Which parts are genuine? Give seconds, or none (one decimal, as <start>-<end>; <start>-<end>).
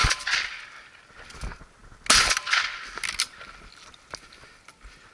0.0-5.1